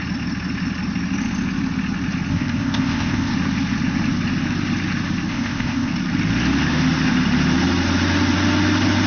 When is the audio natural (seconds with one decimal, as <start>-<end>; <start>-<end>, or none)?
0.0-2.3; 3.3-5.3; 5.9-9.1